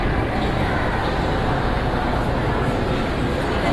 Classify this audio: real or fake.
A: real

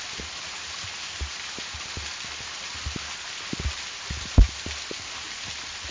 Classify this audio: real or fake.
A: real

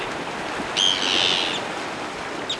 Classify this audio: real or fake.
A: real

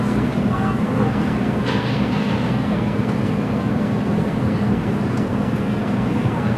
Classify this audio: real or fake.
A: fake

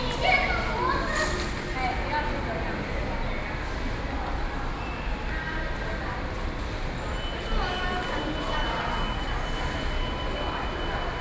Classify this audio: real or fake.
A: real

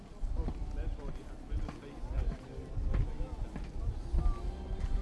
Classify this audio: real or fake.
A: real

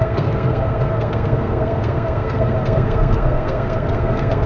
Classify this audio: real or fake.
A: fake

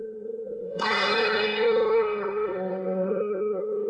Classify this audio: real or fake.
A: fake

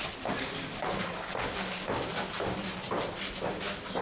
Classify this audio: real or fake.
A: real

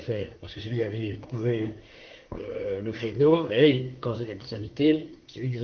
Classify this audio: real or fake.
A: fake